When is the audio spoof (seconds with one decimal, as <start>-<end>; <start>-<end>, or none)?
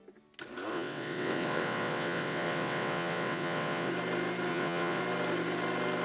0.7-3.9; 4.5-5.0